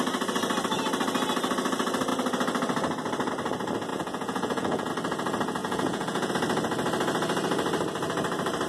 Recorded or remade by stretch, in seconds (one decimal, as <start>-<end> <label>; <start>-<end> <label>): 0.0-3.9 recorded; 3.9-4.9 remade; 4.9-5.6 recorded; 5.6-6.3 remade; 6.3-8.7 recorded

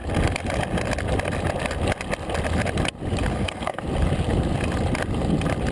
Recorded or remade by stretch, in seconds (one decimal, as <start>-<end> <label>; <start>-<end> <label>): 0.0-3.3 recorded; 3.3-3.8 remade; 3.8-5.7 recorded

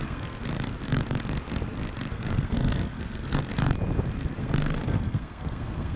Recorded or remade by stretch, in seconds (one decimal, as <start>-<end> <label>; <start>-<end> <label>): 0.0-0.4 remade; 0.4-2.1 recorded; 2.1-3.5 remade; 3.5-4.4 recorded; 4.4-6.0 remade

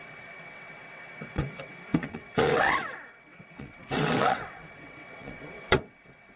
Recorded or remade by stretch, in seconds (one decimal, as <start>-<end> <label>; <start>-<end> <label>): 0.0-6.4 remade

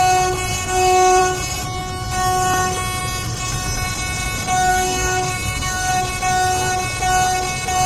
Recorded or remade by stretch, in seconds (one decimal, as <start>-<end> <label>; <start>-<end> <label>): 0.0-0.5 recorded; 0.5-1.2 remade; 1.2-4.7 recorded; 4.7-5.9 remade; 5.9-7.9 recorded

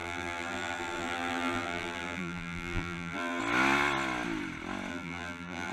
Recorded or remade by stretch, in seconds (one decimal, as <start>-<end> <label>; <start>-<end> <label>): 0.0-3.4 remade; 3.4-4.9 recorded; 4.9-5.7 remade